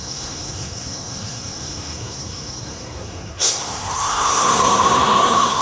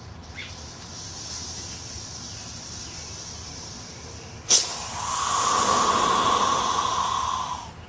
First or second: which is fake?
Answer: first